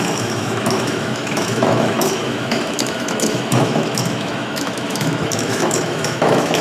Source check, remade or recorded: remade